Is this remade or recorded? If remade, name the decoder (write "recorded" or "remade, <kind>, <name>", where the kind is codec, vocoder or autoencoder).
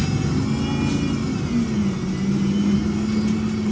recorded